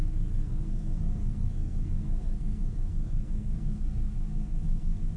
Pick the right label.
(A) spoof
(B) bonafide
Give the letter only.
A